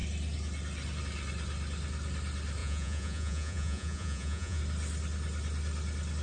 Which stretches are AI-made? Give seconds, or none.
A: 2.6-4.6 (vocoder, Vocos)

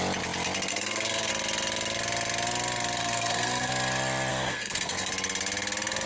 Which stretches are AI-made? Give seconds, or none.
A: 0.7-1.3 (codec, SNAC); 3.0-3.7; 4.3-5.1

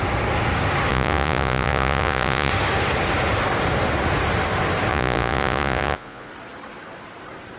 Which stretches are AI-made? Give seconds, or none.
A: 0.9-2.5 (vocoder, Vocos); 4.9-6.3

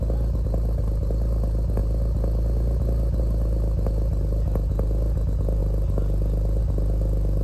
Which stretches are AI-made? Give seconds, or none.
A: none

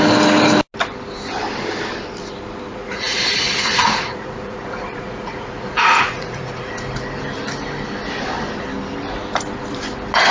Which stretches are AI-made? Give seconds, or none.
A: 2.7-6.7 (vocoder, Vocos)